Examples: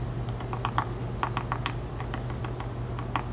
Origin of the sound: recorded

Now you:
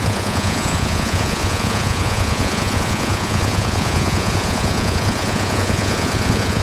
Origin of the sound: remade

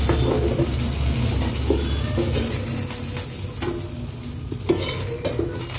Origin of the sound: recorded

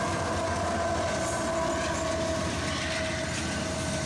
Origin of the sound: recorded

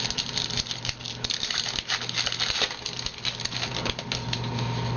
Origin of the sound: recorded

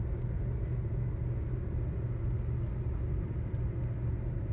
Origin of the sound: recorded